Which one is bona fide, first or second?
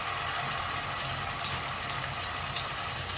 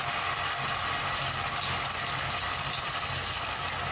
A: second